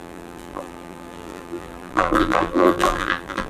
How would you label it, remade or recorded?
remade